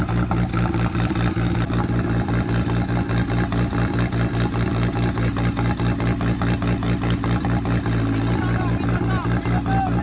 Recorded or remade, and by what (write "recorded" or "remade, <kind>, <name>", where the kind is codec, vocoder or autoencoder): recorded